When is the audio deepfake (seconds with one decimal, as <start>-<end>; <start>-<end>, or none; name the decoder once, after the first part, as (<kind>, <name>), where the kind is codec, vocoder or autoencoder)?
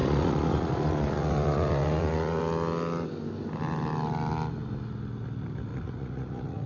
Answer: 0.0-2.4 (vocoder, Vocos); 5.7-6.7